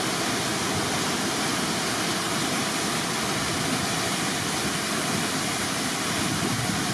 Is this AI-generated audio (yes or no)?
no